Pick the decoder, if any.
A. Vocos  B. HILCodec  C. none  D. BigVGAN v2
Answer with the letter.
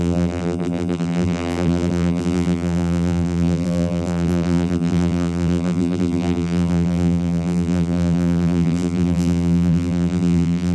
D